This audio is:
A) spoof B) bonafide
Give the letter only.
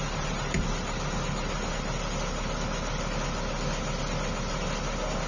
B